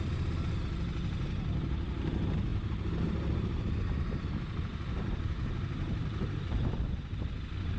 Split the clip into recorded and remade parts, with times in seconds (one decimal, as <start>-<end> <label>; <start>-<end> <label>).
0.0-2.5 recorded; 2.5-7.2 remade; 7.2-7.8 recorded